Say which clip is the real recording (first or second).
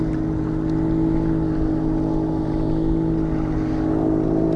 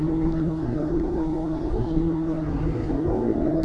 first